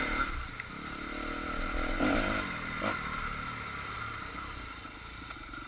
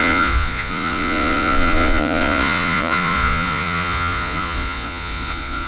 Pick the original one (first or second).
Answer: first